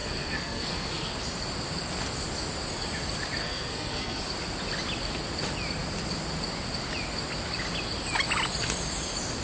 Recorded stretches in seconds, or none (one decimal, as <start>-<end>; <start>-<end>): 1.1-3.4; 4.2-9.4